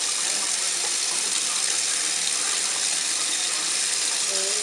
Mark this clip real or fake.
real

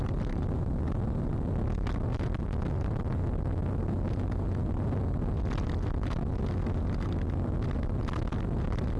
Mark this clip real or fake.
real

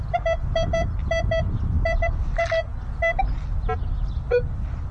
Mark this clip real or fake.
real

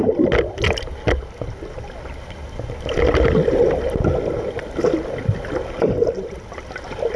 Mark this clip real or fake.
real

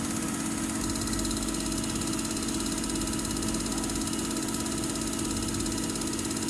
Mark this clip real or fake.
real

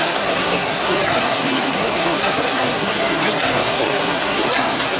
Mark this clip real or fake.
fake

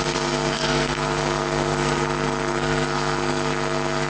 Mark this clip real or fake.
fake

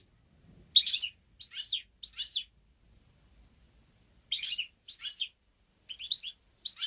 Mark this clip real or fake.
real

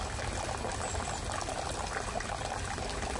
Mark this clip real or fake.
real